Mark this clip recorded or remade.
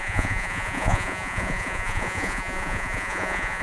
remade